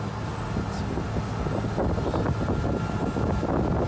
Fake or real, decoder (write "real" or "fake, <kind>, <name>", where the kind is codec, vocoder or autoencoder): real